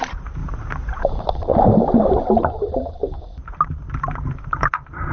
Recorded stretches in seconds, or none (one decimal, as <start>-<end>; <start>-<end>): 0.4-1.0; 1.5-2.1